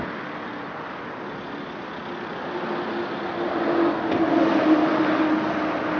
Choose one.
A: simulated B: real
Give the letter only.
B